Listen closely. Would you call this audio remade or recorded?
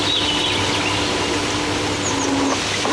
recorded